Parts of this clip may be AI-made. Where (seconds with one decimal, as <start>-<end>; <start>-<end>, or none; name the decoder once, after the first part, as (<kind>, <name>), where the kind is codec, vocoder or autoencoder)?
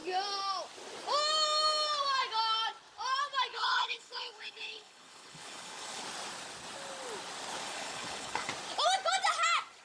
3.5-6.0 (codec, HILCodec); 7.6-8.5